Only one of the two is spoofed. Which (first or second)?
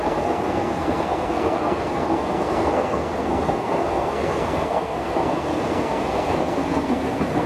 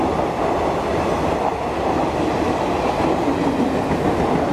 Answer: first